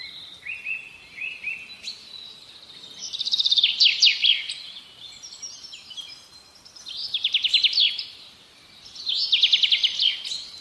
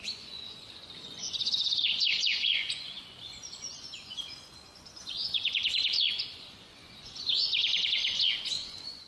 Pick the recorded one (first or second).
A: first